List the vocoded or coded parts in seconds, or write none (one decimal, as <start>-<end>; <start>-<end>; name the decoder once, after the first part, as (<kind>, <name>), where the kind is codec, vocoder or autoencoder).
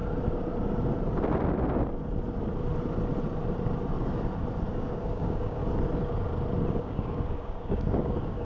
4.7-5.6 (codec, DAC); 6.7-8.4